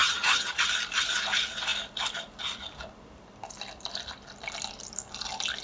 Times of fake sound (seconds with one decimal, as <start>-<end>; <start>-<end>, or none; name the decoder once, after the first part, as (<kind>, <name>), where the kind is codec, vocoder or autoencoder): 0.0-0.6 (vocoder, HiFi-GAN)